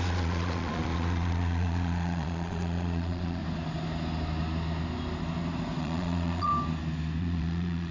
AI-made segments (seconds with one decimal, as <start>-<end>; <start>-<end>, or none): 0.0-3.4; 5.8-6.5; 7.2-7.9